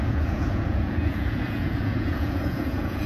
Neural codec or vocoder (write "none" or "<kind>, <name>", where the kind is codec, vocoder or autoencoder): vocoder, Vocos